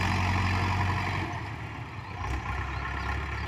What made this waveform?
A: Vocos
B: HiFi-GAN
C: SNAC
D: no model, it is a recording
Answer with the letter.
D